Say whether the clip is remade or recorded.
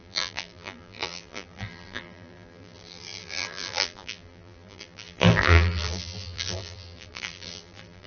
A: remade